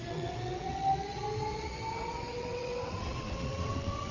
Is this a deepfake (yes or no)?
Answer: yes